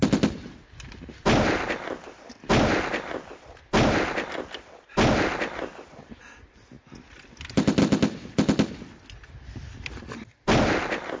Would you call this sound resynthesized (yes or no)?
no